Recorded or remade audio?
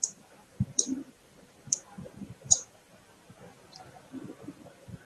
remade